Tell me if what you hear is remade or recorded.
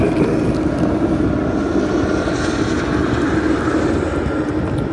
recorded